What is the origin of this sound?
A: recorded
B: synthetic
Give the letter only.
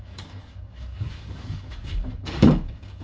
B